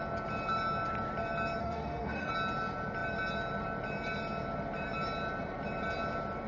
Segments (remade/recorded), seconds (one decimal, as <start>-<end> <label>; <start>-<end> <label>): 0.0-1.6 recorded; 1.6-2.3 remade; 2.3-6.5 recorded